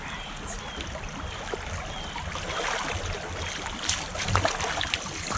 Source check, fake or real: real